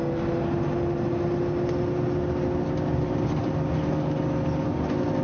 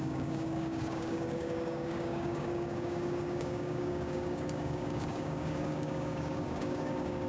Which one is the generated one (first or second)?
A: second